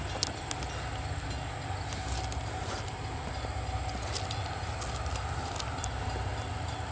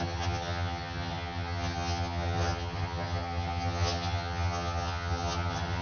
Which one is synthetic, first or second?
second